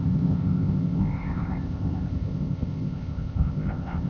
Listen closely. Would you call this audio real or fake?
fake